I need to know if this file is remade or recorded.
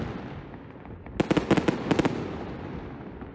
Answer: recorded